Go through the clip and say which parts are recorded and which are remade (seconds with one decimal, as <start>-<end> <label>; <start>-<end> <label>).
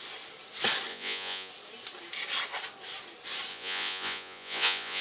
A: 0.0-0.9 recorded; 0.9-1.5 remade; 1.5-3.5 recorded; 3.5-5.0 remade